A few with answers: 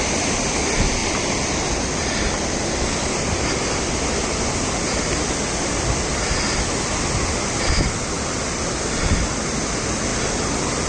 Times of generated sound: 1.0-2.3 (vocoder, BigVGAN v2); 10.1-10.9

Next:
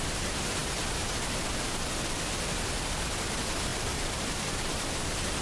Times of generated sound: 3.7-4.3 (vocoder, BigVGAN v2)

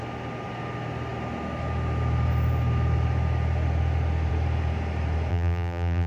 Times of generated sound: 5.3-6.1 (vocoder, BigVGAN v2)